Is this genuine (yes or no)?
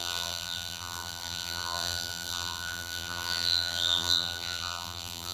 no